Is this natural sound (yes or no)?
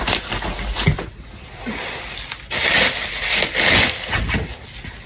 yes